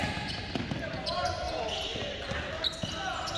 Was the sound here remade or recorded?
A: recorded